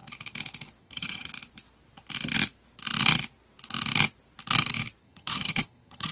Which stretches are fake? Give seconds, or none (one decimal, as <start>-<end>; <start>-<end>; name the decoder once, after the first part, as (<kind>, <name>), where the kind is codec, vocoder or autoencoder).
0.8-1.3 (vocoder, HiFi-GAN); 5.0-6.1